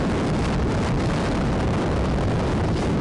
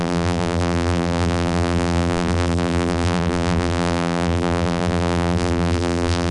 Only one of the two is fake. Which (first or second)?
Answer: second